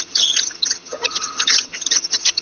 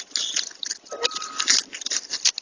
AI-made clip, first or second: first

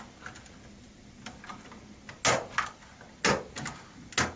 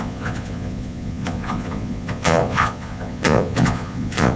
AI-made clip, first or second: second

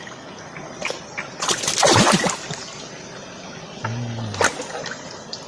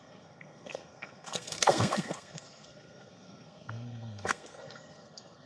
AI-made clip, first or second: second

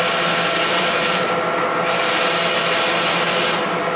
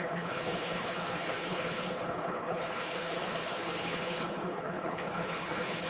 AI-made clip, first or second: second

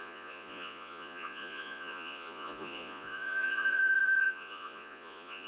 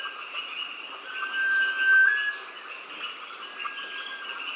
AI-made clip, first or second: first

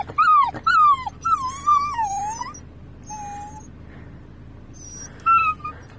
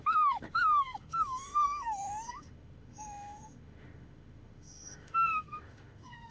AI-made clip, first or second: second